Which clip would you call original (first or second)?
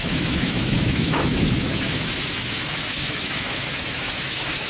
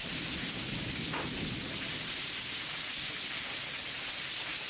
second